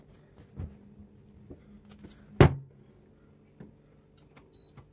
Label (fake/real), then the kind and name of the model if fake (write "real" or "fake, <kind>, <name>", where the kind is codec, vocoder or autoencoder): real